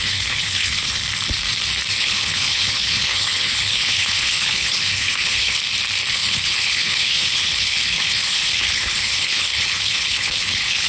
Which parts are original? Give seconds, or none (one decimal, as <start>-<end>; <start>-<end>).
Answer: 1.0-1.9; 5.6-6.1